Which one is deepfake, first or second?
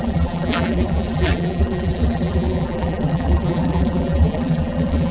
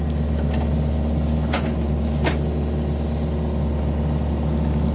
first